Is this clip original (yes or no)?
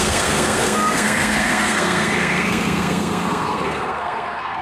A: no